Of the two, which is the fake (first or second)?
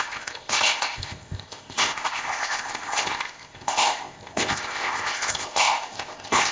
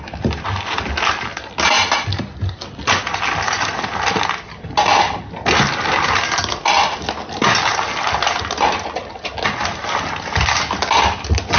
first